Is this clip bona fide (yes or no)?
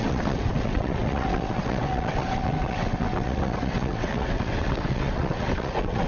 no